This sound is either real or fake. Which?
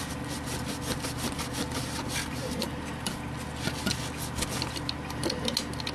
real